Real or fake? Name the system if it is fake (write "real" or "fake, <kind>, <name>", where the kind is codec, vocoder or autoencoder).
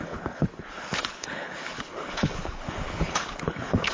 fake, codec, HILCodec